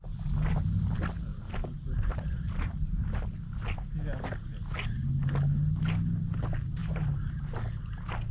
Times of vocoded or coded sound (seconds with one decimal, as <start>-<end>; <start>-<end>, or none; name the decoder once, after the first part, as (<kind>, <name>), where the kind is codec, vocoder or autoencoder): 1.3-2.7 (vocoder, BigVGAN v2); 6.8-7.4